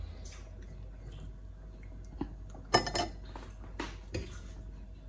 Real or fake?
real